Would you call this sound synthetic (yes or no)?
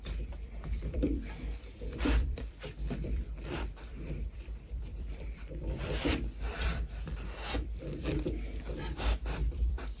yes